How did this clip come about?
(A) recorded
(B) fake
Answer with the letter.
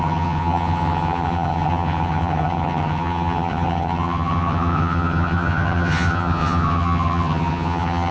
B